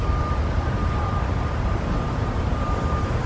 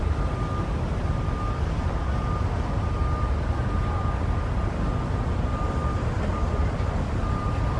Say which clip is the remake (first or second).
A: first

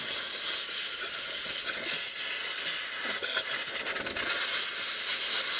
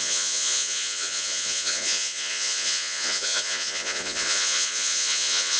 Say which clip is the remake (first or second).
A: second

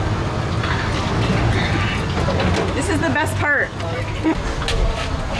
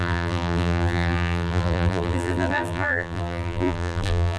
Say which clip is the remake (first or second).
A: second